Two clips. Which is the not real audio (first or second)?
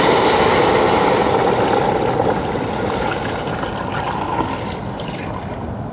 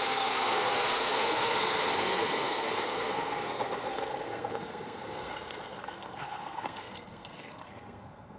second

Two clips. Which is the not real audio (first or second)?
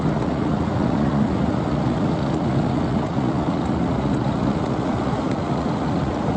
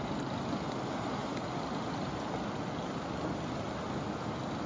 first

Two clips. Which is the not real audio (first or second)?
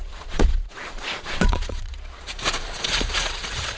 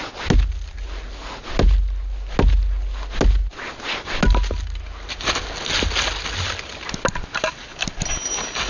first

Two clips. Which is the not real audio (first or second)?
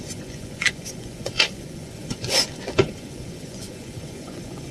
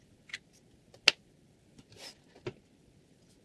first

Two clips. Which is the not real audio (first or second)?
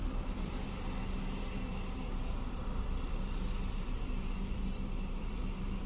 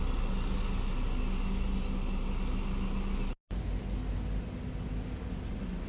first